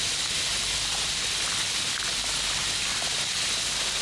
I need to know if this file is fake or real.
real